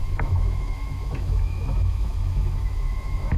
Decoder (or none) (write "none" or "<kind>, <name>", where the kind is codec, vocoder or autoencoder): autoencoder, DAC-VAE